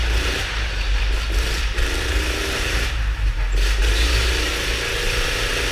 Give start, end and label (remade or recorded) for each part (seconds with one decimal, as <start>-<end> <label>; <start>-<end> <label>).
0.0-3.4 remade; 3.4-3.8 recorded; 3.8-4.5 remade; 4.5-5.7 recorded